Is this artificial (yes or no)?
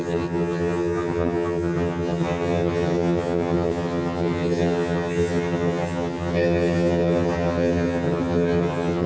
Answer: yes